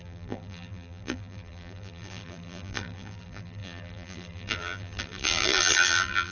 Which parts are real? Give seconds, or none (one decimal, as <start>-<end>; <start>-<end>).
none

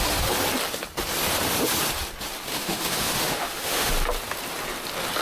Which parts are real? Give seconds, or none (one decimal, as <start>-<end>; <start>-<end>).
0.0-2.5; 3.9-5.2

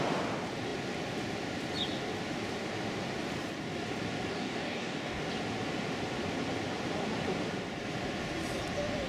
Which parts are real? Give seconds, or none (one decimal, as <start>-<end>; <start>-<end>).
0.0-4.3; 5.2-9.1

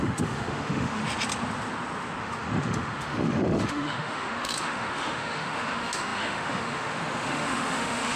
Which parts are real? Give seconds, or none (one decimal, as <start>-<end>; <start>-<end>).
1.0-2.2

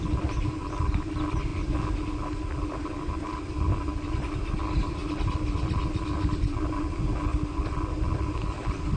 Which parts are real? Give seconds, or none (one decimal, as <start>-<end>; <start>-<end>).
0.0-9.0

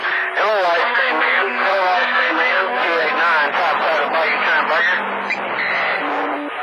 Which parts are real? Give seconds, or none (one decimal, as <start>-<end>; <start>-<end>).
0.0-0.8; 3.1-6.6